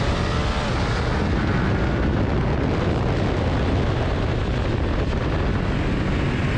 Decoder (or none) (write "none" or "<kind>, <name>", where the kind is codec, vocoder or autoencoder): none